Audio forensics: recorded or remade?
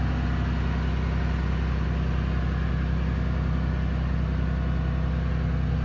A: recorded